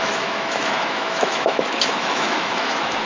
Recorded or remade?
remade